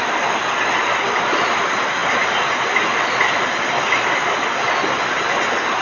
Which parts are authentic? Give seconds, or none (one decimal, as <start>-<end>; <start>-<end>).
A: 0.0-5.8